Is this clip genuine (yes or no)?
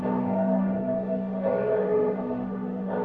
no